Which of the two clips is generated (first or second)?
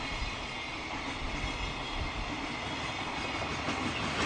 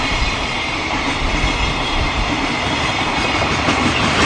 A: second